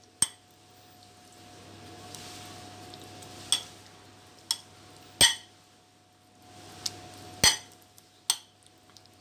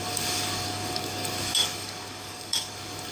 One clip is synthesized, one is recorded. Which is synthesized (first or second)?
second